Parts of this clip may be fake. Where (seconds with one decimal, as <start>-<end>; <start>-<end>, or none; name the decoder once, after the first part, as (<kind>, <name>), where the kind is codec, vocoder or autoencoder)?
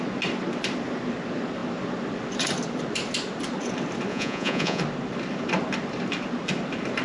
4.1-4.8 (vocoder, Vocos)